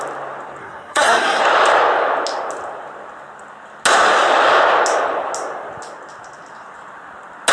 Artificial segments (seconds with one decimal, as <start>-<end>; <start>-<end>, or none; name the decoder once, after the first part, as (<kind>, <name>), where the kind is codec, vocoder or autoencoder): 0.6-1.4 (codec, SNAC)